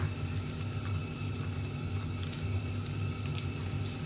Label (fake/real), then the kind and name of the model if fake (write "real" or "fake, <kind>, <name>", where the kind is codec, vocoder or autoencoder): real